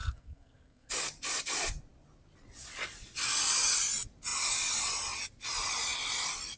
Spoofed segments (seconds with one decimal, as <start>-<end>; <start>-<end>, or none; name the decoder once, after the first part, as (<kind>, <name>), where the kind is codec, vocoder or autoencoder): 0.0-0.9 (codec, SNAC)